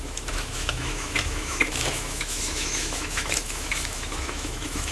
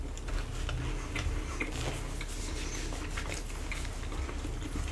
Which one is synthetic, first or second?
first